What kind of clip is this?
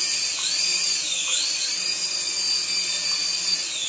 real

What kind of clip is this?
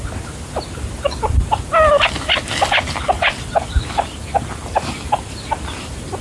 real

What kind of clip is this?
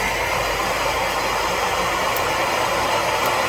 real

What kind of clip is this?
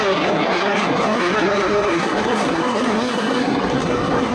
fake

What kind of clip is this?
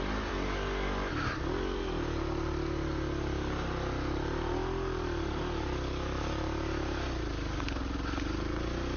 real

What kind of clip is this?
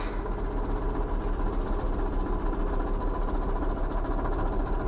real